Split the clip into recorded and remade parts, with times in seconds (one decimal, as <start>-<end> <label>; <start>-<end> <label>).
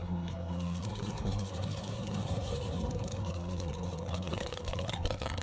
0.0-5.4 remade